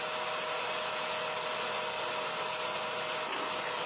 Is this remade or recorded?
recorded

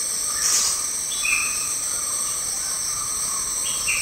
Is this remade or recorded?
remade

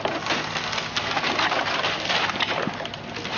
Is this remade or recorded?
recorded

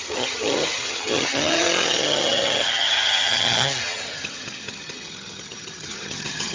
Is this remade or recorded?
remade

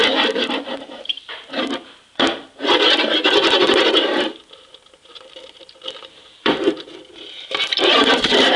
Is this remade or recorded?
remade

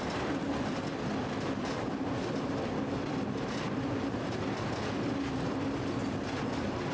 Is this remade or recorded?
recorded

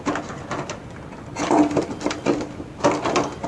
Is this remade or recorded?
recorded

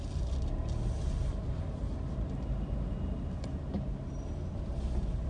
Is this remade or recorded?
recorded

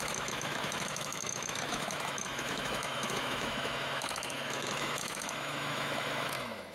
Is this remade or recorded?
remade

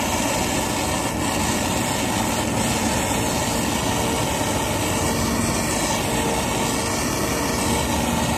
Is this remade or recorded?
recorded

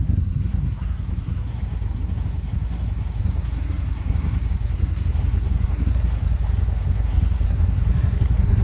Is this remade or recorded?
remade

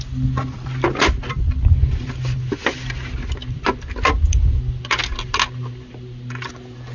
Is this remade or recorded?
recorded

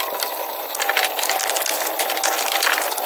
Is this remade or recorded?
recorded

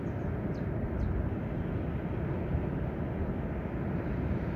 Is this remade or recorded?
recorded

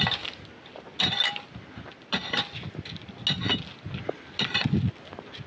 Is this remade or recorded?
recorded